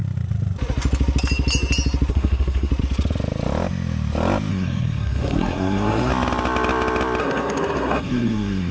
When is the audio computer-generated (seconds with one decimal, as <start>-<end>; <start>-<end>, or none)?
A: 2.1-2.7; 4.5-6.1; 7.2-8.7